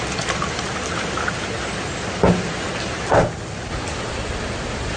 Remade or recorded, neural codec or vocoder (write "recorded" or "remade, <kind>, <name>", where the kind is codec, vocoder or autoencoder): recorded